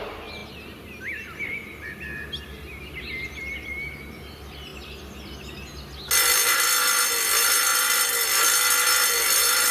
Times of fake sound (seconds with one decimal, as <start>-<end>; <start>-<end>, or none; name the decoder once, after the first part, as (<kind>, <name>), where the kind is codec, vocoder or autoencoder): none

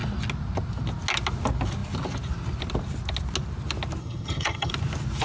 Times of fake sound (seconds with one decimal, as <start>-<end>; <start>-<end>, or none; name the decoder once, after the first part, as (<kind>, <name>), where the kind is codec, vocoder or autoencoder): 4.0-4.7 (vocoder, HiFi-GAN)